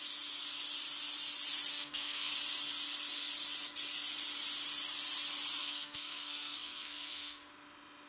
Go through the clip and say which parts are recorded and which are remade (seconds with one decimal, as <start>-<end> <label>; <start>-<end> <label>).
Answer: 0.0-1.7 recorded; 1.7-2.3 remade; 2.3-5.6 recorded; 5.6-7.5 remade; 7.5-8.1 recorded